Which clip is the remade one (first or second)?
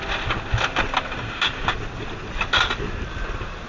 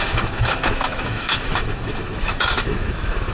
second